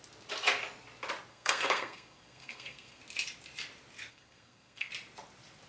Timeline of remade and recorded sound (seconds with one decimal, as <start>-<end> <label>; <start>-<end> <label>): 0.0-1.3 recorded; 1.3-3.0 remade; 3.0-4.1 recorded; 4.1-4.9 remade; 4.9-5.7 recorded